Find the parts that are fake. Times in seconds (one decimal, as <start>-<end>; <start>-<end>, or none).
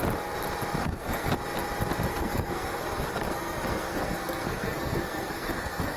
0.8-1.3; 2.1-6.0